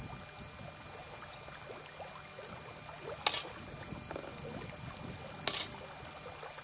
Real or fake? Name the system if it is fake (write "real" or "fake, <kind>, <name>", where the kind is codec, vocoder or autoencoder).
real